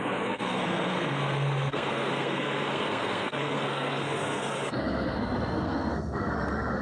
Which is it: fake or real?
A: fake